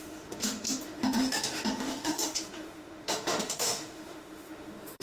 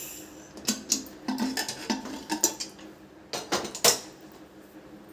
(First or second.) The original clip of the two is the second